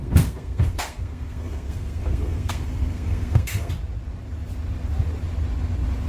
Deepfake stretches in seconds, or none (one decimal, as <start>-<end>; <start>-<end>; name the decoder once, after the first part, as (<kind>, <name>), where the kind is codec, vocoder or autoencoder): 0.0-3.7 (codec, SNAC)